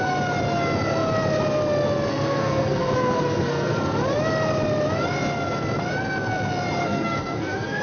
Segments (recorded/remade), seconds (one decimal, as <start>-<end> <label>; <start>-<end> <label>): 0.0-2.1 recorded; 2.1-3.8 remade; 3.8-6.8 recorded; 6.8-7.8 remade